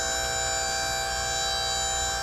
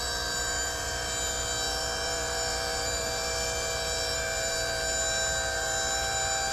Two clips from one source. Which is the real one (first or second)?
first